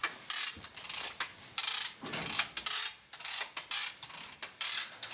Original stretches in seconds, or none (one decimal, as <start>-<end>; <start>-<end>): 0.0-5.1